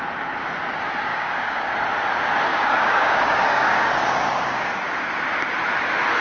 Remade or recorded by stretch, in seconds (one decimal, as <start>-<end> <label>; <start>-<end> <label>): 0.0-1.1 recorded; 1.1-1.7 remade; 1.7-2.5 recorded; 2.5-4.7 remade; 4.7-6.2 recorded